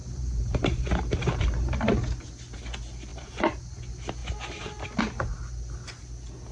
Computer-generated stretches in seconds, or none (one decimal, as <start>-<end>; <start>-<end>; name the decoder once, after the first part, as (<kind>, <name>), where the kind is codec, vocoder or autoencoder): 0.0-1.8 (vocoder, BigVGAN v2); 3.1-3.7